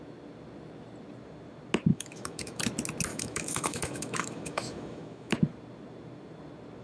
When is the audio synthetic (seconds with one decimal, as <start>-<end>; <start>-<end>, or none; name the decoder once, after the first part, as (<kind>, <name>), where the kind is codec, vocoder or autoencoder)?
1.9-2.6 (autoencoder, DAC-VAE); 3.1-5.3